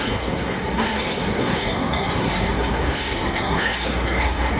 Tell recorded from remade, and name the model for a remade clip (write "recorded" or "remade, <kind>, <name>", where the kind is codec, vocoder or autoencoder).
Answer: remade, codec, SNAC